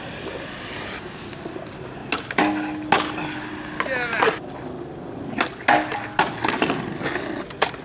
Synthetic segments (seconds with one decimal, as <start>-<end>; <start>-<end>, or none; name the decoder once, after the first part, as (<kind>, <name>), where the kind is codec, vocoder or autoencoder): none